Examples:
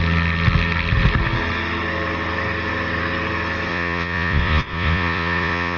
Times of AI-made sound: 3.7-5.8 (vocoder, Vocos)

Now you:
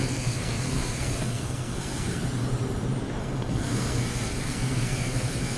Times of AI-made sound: 0.0-2.2 (codec, SNAC); 3.2-5.6

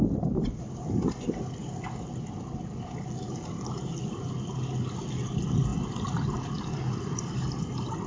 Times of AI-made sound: 5.7-7.6 (vocoder, BigVGAN v2)